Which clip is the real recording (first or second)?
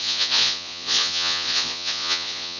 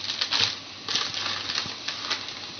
second